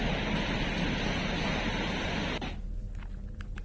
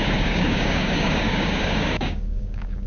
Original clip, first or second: first